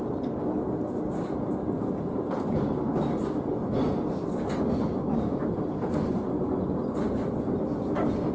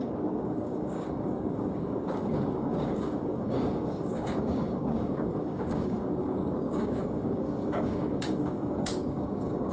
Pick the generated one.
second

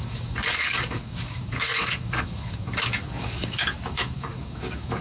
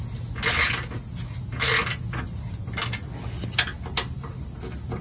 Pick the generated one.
first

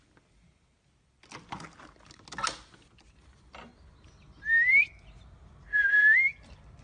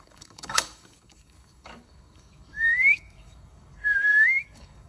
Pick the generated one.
second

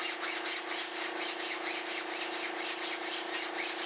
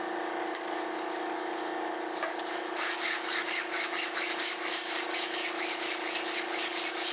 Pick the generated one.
second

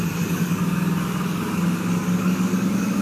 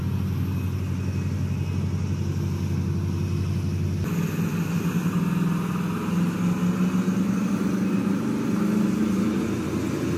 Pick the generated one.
first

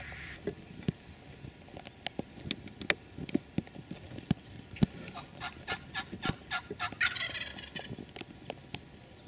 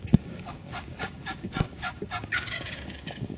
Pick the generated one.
second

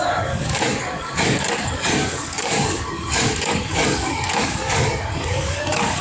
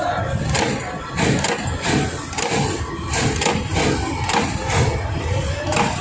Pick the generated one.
first